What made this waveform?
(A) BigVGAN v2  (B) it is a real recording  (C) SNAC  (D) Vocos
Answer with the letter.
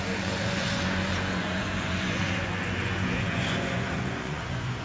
D